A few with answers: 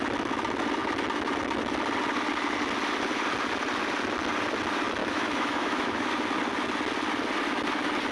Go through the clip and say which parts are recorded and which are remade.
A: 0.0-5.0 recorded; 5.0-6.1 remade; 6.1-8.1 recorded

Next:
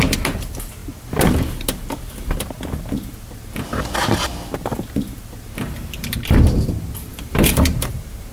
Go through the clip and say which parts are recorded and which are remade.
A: 0.0-7.1 recorded; 7.1-7.9 remade; 7.9-8.3 recorded

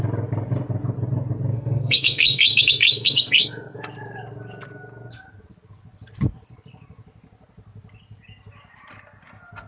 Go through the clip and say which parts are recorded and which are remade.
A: 0.0-1.5 recorded; 1.5-3.8 remade; 3.8-9.7 recorded

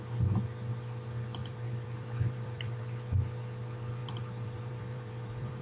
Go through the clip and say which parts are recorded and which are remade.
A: 0.0-1.4 recorded; 1.4-2.8 remade; 2.8-4.0 recorded; 4.0-5.6 remade